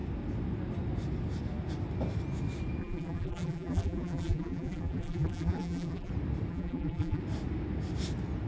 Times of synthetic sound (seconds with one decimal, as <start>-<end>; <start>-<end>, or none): 2.8-6.1; 6.5-7.2